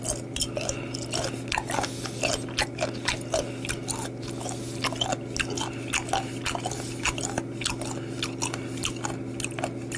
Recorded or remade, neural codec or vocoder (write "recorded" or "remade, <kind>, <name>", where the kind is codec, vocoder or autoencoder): recorded